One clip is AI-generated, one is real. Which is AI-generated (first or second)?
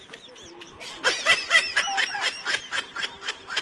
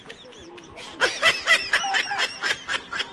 first